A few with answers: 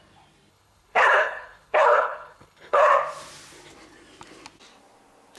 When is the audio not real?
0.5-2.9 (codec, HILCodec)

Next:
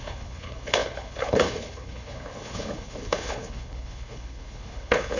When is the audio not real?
0.0-5.2 (codec, HILCodec)

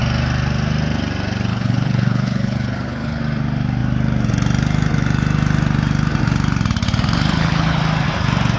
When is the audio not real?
1.5-3.2 (codec, HILCodec); 7.3-7.8